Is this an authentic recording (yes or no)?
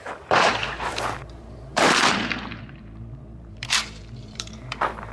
no